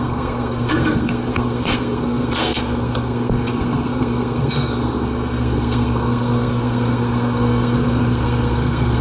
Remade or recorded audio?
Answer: remade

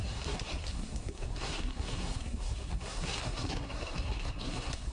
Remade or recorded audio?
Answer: remade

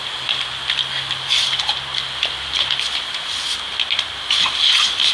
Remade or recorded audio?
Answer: recorded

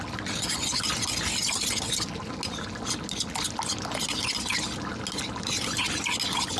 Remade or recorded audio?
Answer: recorded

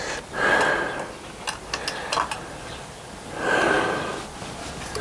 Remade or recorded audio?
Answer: recorded